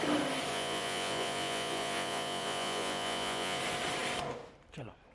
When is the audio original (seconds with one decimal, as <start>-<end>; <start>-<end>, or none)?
0.0-0.5; 3.6-5.1